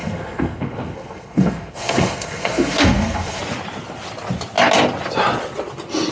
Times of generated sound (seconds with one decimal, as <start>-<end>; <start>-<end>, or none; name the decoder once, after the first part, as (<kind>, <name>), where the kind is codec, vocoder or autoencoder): 0.0-3.4 (codec, SNAC)